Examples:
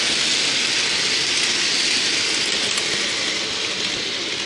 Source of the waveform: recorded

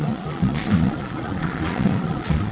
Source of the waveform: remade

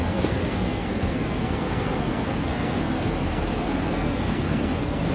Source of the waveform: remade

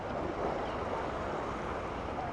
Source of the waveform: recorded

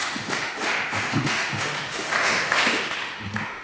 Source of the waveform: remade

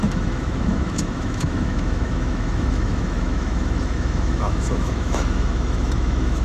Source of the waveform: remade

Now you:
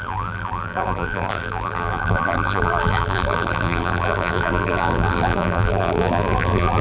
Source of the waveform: remade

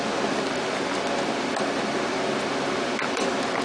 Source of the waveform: recorded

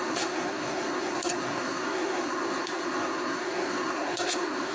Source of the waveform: remade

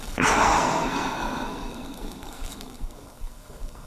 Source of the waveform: remade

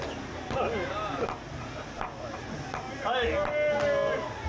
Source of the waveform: recorded